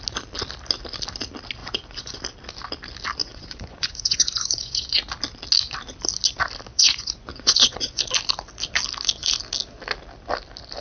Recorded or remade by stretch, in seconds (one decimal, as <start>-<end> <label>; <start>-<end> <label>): 0.0-1.6 recorded; 1.6-2.2 remade; 2.2-3.2 recorded; 3.2-5.0 remade; 5.0-6.7 recorded; 6.7-8.0 remade; 8.0-10.8 recorded